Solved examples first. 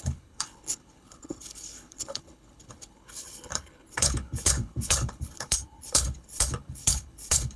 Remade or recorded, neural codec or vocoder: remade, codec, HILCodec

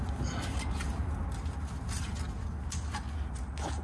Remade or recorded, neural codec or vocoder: recorded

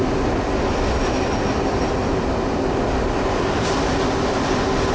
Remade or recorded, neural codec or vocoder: recorded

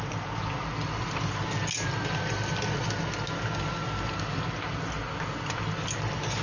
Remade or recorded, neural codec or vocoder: recorded